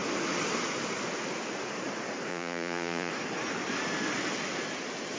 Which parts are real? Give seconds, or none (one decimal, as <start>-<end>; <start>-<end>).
0.0-2.3; 3.1-5.2